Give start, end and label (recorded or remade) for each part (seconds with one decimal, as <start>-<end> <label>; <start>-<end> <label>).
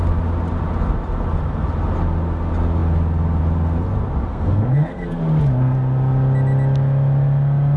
0.0-4.3 recorded; 4.3-5.2 remade; 5.2-7.8 recorded